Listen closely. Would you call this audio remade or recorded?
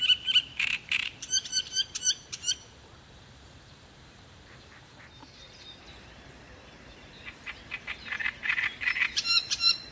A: remade